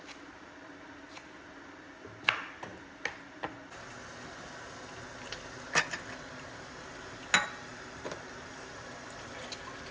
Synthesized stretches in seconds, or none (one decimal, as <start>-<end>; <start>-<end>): 7.7-9.3